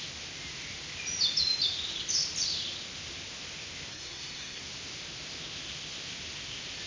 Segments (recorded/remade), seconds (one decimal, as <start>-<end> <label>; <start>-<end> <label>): 0.0-3.9 recorded; 3.9-4.6 remade; 4.6-6.9 recorded